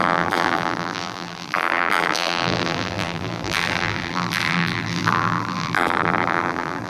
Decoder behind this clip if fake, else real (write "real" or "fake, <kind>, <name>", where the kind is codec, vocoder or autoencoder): fake, vocoder, BigVGAN v2